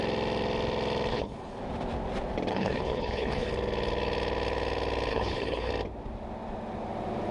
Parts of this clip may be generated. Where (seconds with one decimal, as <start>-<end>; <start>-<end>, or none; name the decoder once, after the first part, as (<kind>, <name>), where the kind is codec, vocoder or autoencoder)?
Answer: 1.1-1.6 (codec, HILCodec); 2.5-3.5; 5.1-5.7